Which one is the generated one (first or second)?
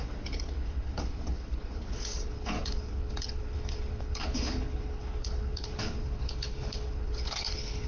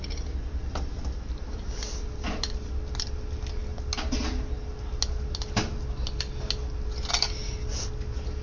first